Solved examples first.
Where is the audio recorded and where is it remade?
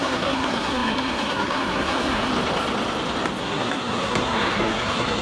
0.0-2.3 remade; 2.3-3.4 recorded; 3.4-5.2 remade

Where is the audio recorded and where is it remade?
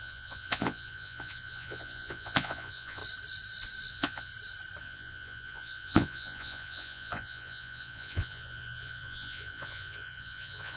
0.0-3.0 remade; 3.0-3.9 recorded; 3.9-4.3 remade; 4.3-4.8 recorded; 4.8-10.8 remade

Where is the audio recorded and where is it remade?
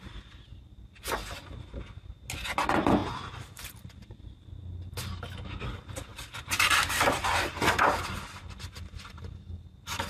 0.0-3.0 recorded; 3.0-4.4 remade; 4.4-6.1 recorded; 6.1-9.2 remade; 9.2-10.1 recorded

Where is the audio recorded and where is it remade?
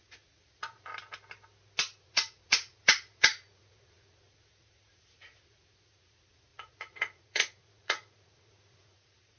0.0-0.9 remade; 0.9-2.0 recorded; 2.0-9.4 remade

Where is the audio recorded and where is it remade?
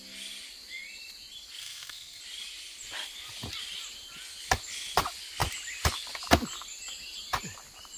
0.0-1.6 recorded; 1.6-2.2 remade; 2.2-8.0 recorded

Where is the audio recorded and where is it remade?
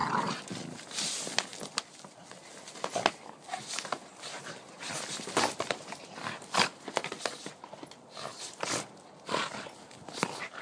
0.0-10.6 recorded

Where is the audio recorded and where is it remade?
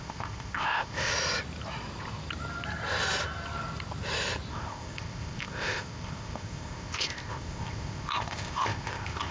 0.0-1.1 remade; 1.1-4.5 recorded; 4.5-9.3 remade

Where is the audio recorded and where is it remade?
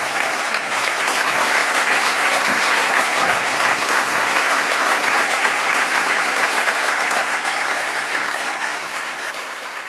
0.0-9.9 remade